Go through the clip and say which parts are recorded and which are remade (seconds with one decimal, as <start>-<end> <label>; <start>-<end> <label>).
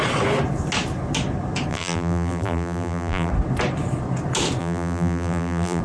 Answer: 0.0-1.7 recorded; 1.7-3.3 remade; 3.3-4.6 recorded; 4.6-5.8 remade